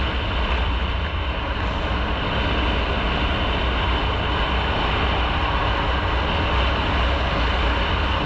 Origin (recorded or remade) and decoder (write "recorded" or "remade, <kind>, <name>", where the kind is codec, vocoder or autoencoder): recorded